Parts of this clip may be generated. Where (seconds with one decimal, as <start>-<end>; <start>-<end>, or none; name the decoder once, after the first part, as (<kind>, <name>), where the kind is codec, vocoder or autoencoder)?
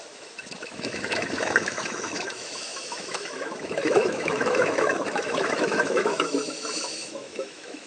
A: 0.0-7.9 (autoencoder, DAC-VAE)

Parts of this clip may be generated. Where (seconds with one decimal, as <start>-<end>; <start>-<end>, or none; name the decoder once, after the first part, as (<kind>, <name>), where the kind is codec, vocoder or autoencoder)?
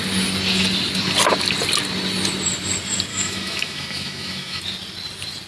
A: 3.1-4.6 (autoencoder, DAC-VAE)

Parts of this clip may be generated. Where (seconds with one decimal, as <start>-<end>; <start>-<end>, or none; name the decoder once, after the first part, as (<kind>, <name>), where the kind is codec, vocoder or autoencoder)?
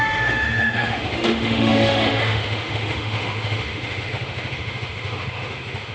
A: 0.0-5.9 (autoencoder, DAC-VAE)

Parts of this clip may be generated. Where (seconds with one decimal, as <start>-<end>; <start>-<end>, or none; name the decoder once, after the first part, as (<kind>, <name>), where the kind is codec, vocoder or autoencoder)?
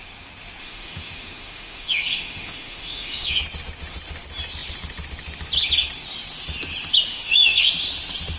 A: 0.6-3.4 (autoencoder, DAC-VAE); 7.1-7.7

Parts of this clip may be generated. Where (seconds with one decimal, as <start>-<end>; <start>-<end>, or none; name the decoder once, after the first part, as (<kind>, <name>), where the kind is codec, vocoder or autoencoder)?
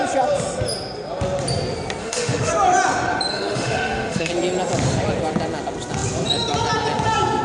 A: 2.0-2.5 (autoencoder, DAC-VAE); 3.3-4.3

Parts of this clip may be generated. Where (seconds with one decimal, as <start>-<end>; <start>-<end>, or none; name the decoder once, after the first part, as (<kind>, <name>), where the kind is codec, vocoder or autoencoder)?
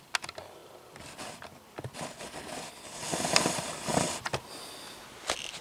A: none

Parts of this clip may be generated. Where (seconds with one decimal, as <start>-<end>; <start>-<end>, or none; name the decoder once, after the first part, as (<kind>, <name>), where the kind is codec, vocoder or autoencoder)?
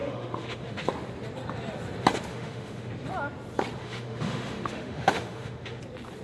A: 0.0-0.9 (autoencoder, DAC-VAE); 2.3-2.9; 3.8-5.8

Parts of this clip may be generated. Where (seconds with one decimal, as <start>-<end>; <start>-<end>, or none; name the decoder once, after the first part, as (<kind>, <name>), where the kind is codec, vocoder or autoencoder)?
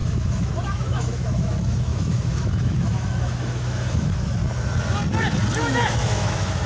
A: 0.0-4.4 (autoencoder, DAC-VAE); 5.6-6.7